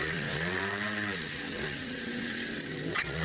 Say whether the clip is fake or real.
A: fake